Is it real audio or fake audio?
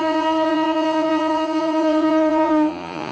fake